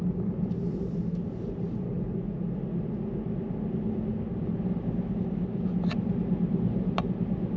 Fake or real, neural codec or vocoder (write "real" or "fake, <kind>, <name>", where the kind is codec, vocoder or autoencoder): real